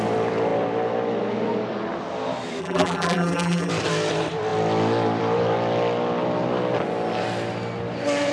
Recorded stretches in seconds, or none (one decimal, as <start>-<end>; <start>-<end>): 0.0-2.6; 3.7-8.3